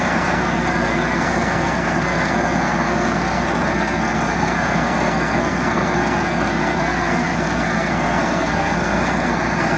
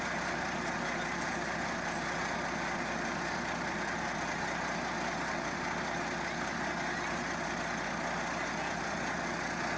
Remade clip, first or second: first